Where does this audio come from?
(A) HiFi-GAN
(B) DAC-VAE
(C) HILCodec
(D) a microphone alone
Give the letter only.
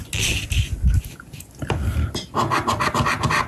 D